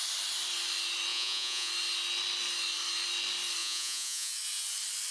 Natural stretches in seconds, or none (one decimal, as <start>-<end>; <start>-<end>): 0.0-1.1; 1.7-3.6; 4.3-5.1